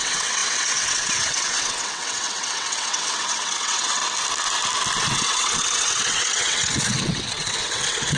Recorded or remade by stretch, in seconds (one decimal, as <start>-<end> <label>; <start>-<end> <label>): 0.0-4.0 remade; 4.0-5.0 recorded; 5.0-8.2 remade